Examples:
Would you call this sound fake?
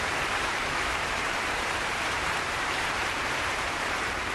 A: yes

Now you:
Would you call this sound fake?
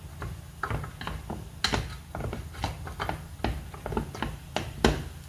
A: no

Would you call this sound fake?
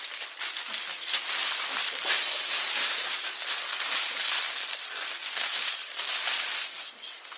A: yes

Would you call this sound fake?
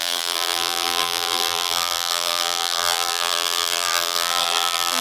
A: yes